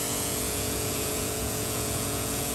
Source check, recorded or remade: remade